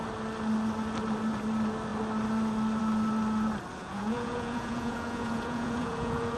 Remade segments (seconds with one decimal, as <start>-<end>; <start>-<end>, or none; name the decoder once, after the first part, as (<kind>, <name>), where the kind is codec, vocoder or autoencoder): 3.8-6.4 (vocoder, Vocos)